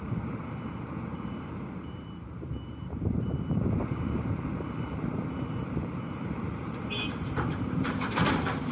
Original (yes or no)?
no